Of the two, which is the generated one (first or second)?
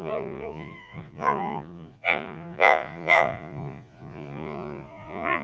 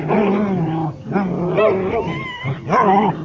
first